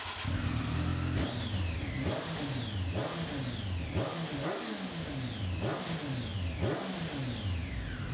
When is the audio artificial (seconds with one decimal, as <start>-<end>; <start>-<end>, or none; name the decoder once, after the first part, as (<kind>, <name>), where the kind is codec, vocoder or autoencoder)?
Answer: none